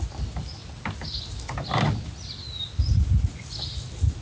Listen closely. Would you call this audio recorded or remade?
recorded